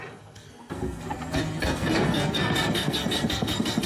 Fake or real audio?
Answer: fake